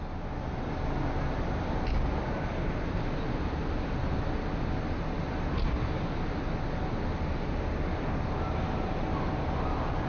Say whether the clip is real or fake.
real